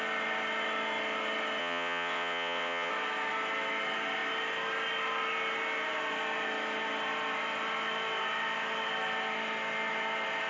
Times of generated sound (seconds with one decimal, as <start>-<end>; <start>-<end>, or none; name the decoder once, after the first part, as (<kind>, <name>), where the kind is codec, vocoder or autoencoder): 1.6-2.9 (vocoder, WaveNeXt)